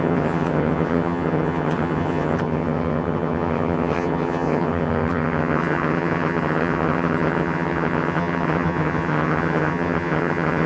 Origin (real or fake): fake